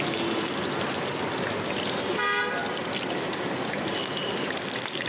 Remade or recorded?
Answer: recorded